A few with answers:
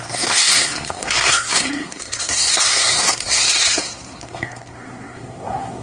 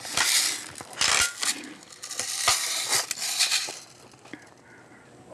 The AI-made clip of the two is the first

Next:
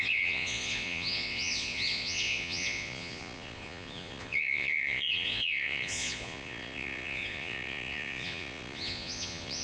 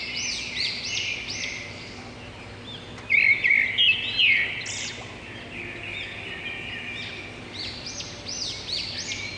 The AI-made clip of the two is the first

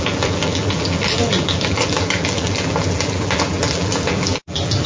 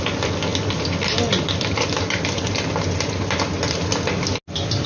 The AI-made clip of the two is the first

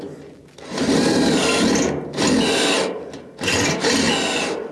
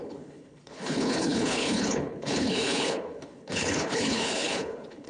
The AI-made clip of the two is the second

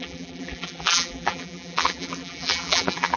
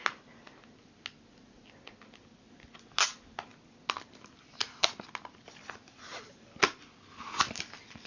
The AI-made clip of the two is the first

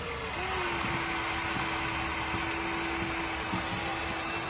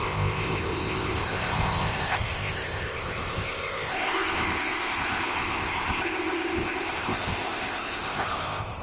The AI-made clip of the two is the second